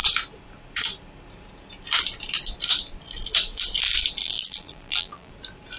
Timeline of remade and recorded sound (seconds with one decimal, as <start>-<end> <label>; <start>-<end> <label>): 0.0-4.2 recorded; 4.2-5.3 remade; 5.3-5.8 recorded